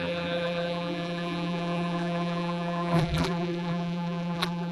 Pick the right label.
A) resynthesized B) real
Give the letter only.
A